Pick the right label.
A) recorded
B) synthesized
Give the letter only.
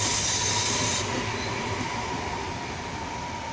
A